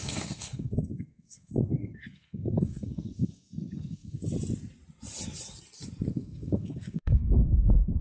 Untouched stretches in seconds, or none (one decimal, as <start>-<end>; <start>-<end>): 4.2-6.1